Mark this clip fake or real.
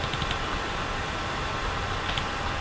real